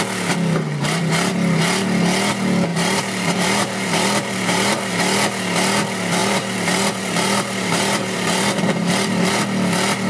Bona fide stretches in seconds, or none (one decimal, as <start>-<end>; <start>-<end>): 0.0-2.7; 4.9-6.2; 9.4-10.1